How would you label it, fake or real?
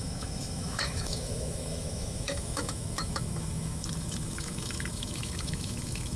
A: fake